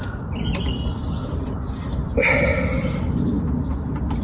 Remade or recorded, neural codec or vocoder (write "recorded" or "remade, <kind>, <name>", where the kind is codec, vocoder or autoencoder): recorded